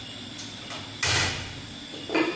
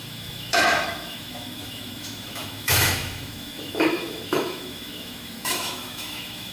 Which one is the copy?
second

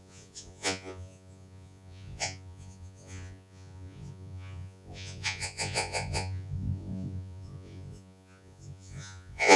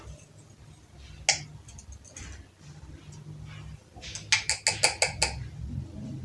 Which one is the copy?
first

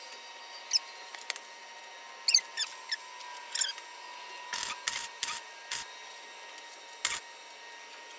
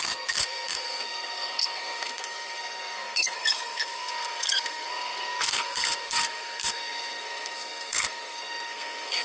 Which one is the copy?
second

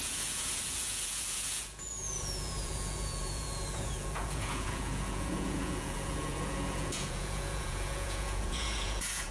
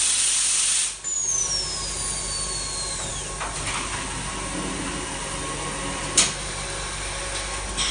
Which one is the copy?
first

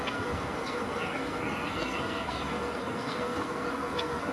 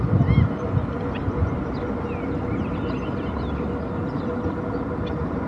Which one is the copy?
first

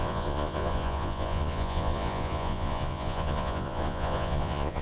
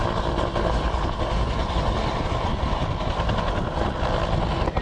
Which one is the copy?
first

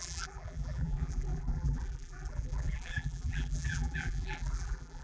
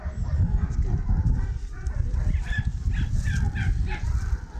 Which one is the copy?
first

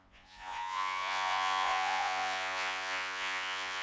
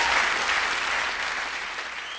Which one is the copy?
first